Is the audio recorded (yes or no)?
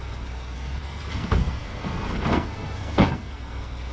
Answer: no